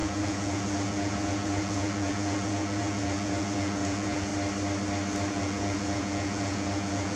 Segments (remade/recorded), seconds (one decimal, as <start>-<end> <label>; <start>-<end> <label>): 0.0-4.3 remade; 4.3-5.3 recorded; 5.3-7.2 remade